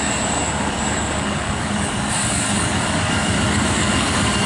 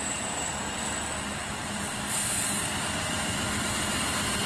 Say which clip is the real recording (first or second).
second